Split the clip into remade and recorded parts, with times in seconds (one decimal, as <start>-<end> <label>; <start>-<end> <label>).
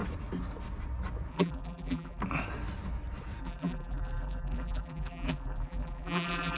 0.0-1.3 recorded; 1.3-2.2 remade; 2.2-3.4 recorded; 3.4-6.6 remade